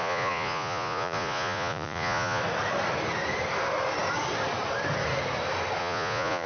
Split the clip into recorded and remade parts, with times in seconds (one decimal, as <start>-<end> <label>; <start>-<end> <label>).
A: 0.0-2.4 remade; 2.4-5.8 recorded; 5.8-6.5 remade

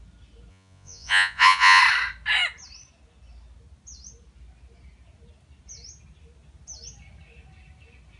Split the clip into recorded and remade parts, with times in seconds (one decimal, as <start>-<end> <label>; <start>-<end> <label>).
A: 0.0-0.5 recorded; 0.5-1.8 remade; 1.8-8.2 recorded

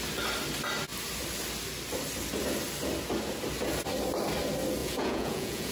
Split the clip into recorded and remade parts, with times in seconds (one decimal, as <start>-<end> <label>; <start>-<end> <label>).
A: 0.0-4.8 recorded; 4.8-5.7 remade

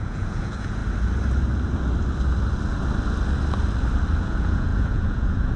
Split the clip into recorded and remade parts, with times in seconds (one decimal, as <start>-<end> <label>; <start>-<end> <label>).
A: 0.0-0.8 remade; 0.8-4.2 recorded; 4.2-5.6 remade

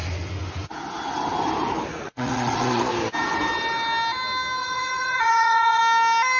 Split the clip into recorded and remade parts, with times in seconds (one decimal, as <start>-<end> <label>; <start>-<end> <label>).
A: 0.0-1.9 recorded; 1.9-2.9 remade; 2.9-4.6 recorded; 4.6-5.8 remade; 5.8-6.4 recorded